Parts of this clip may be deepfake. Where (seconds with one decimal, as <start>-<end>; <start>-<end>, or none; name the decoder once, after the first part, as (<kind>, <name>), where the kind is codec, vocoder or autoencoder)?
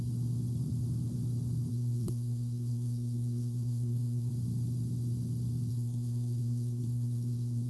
1.7-4.3 (codec, SNAC); 5.7-7.7